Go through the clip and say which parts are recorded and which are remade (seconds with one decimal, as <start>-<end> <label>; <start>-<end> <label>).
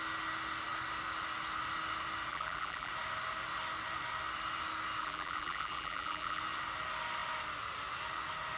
0.0-2.3 recorded; 2.3-2.9 remade; 2.9-5.0 recorded; 5.0-6.4 remade; 6.4-8.6 recorded